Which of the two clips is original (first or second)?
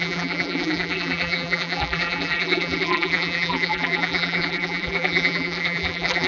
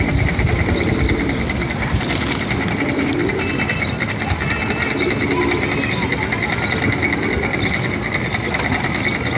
second